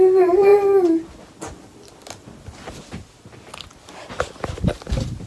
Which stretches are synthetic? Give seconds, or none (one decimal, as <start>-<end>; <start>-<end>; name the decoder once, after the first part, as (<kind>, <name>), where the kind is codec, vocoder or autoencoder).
0.0-0.5 (vocoder, BigVGAN v2); 3.5-5.3